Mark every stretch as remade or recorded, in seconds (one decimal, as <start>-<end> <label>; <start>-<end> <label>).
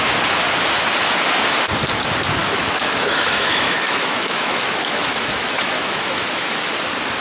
0.0-2.4 recorded; 2.4-6.7 remade; 6.7-7.2 recorded